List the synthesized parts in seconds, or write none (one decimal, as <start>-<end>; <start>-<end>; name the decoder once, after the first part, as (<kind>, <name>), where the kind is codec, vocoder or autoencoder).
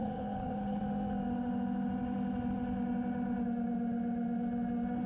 0.0-0.8 (codec, HILCodec)